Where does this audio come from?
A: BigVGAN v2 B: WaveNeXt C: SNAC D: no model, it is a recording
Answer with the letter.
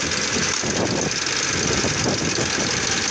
D